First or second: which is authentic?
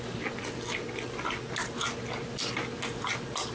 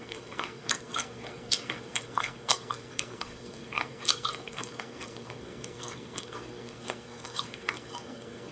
first